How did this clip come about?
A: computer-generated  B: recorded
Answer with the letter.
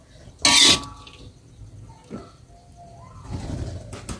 B